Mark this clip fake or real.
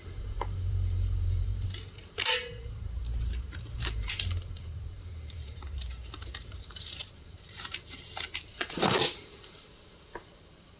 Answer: fake